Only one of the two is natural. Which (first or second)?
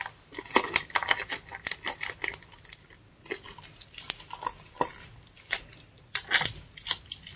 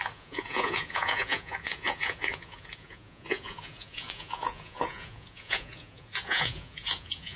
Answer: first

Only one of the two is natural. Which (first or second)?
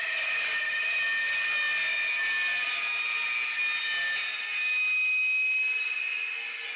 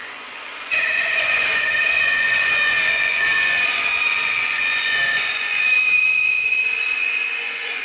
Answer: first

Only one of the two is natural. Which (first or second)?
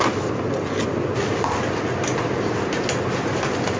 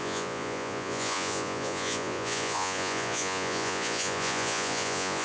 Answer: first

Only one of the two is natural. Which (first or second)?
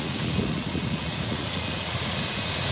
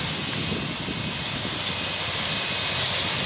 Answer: second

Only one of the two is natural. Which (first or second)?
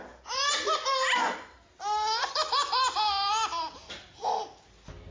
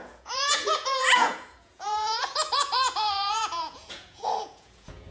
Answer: first